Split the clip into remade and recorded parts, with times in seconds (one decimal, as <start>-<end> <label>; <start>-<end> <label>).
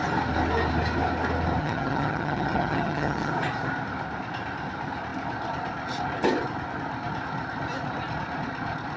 0.0-1.6 recorded; 1.6-3.3 remade; 3.3-9.0 recorded